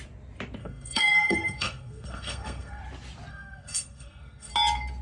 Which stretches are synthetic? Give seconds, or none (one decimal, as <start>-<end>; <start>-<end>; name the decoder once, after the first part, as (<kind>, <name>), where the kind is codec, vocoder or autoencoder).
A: 0.6-2.8 (codec, SNAC); 3.3-4.5